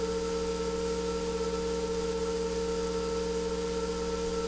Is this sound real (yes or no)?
yes